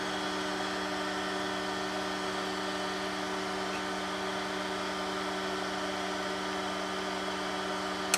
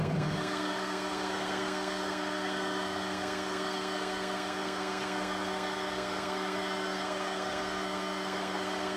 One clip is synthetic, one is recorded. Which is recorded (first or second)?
first